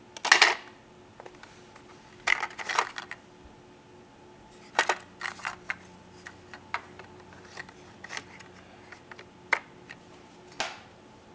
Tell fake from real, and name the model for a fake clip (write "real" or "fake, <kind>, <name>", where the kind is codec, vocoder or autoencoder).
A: real